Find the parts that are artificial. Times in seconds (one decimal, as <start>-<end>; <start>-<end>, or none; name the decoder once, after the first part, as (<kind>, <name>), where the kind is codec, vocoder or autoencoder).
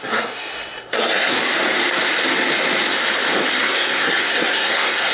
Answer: 0.0-1.4 (codec, SNAC); 3.6-5.1